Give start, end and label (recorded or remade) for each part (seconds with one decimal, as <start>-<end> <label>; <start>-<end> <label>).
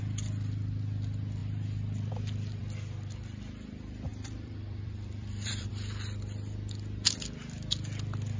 0.0-4.1 recorded; 4.1-5.7 remade; 5.7-8.4 recorded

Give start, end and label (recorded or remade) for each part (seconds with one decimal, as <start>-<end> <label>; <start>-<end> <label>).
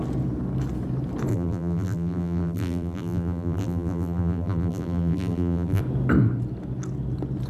0.0-1.3 recorded; 1.3-5.8 remade; 5.8-7.5 recorded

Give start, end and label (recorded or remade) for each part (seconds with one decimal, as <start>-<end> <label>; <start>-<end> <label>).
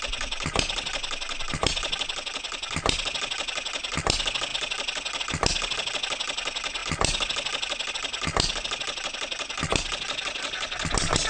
0.0-4.5 recorded; 4.5-5.2 remade; 5.2-11.3 recorded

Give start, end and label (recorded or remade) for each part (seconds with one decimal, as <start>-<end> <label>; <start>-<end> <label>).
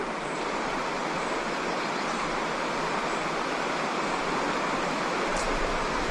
0.0-1.0 remade; 1.0-4.7 recorded; 4.7-6.1 remade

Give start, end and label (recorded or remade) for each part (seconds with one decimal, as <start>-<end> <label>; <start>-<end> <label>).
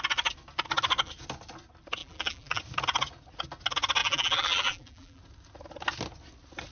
0.0-2.0 recorded; 2.0-2.6 remade; 2.6-4.0 recorded; 4.0-5.2 remade; 5.2-6.7 recorded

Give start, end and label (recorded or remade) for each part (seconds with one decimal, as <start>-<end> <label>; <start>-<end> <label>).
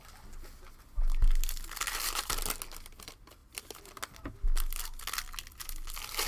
0.0-6.3 recorded